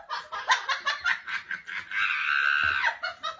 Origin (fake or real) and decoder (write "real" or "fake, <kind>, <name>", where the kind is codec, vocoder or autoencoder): real